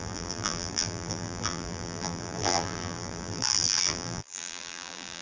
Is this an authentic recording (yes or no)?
no